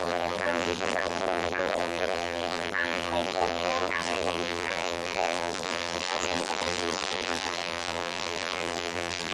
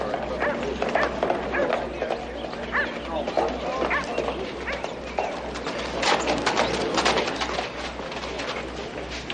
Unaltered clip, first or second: second